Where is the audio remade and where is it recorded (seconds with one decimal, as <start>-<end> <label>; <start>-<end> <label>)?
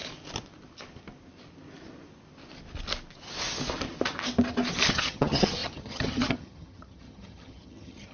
0.0-4.9 recorded; 4.9-8.1 remade